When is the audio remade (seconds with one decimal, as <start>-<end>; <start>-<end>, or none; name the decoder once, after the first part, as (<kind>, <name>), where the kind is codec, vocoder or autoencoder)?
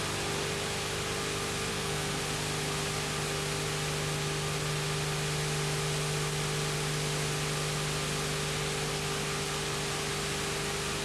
1.7-2.2 (codec, SNAC)